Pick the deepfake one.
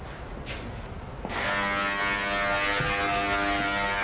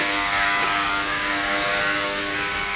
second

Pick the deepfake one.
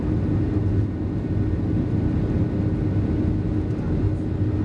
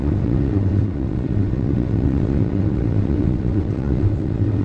second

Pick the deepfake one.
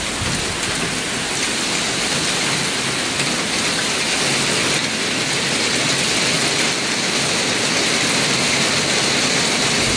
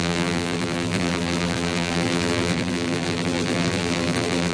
second